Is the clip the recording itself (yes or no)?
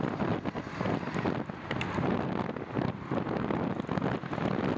yes